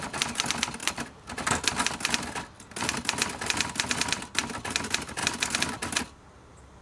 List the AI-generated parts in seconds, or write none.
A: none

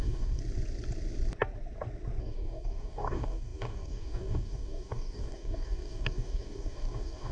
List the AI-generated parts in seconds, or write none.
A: 0.0-0.4 (codec, DAC); 2.2-7.3

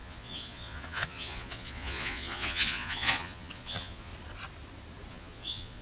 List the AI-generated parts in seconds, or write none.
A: 0.0-4.1 (vocoder, Vocos); 5.1-5.8

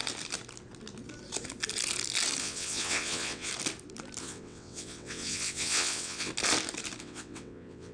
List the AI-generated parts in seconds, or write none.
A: 2.4-3.5 (vocoder, WaveNeXt); 4.2-6.3; 7.0-7.9